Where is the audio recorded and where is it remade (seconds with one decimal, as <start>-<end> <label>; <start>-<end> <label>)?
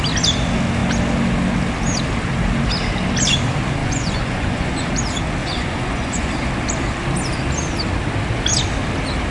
0.0-3.8 recorded; 3.8-4.9 remade; 4.9-5.4 recorded; 5.4-6.3 remade; 6.3-9.3 recorded